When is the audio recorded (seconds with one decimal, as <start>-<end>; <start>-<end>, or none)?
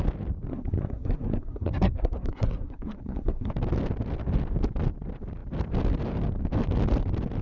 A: 0.0-0.5; 3.5-7.4